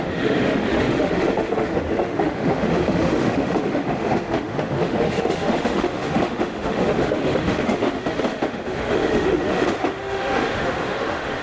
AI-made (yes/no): yes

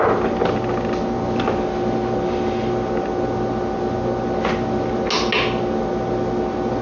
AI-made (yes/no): no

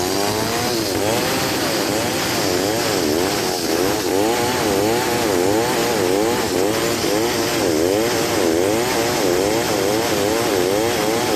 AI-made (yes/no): no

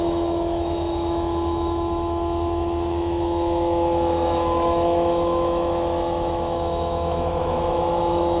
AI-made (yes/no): yes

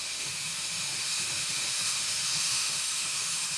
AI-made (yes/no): yes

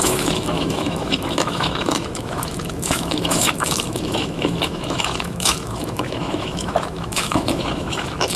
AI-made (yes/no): yes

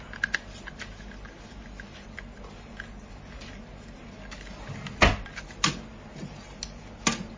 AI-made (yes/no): no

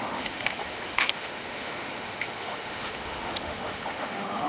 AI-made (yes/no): yes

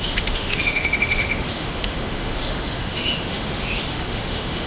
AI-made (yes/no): yes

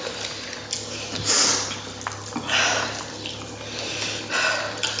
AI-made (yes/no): no